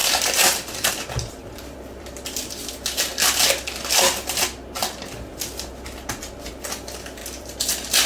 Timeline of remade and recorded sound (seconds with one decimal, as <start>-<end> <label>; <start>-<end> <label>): 0.0-2.7 remade; 2.7-7.2 recorded; 7.2-8.1 remade